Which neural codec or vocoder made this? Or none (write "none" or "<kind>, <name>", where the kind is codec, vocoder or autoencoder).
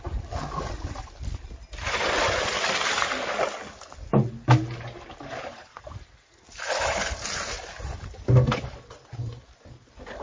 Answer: none